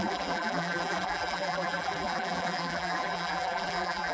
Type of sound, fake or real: fake